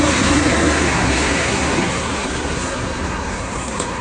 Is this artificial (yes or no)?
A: yes